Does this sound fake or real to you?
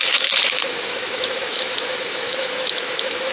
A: fake